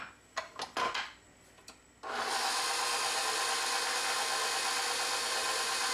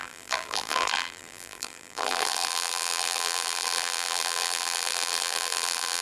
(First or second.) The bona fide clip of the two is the first